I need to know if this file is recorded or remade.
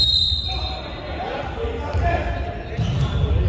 recorded